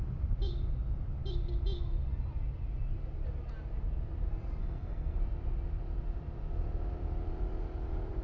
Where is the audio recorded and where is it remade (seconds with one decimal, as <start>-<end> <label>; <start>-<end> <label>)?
0.0-4.6 recorded; 4.6-5.2 remade; 5.2-8.2 recorded